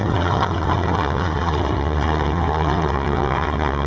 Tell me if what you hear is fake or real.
fake